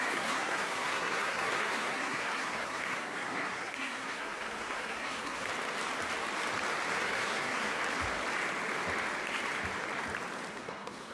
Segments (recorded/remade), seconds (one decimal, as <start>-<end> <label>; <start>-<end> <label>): 0.0-5.5 remade; 5.5-6.9 recorded; 6.9-7.8 remade; 7.8-10.5 recorded; 10.5-11.1 remade